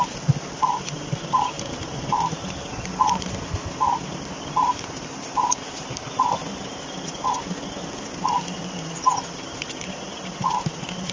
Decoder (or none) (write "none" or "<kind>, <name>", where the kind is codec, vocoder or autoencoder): none